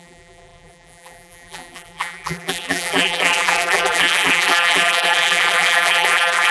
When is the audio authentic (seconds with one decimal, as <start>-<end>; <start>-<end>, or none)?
none